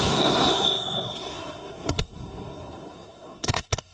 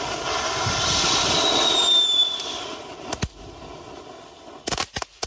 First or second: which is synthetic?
first